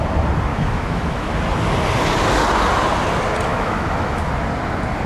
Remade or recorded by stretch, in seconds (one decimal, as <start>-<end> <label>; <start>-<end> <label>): 0.0-0.5 recorded; 0.5-1.3 remade; 1.3-3.5 recorded; 3.5-4.2 remade; 4.2-5.1 recorded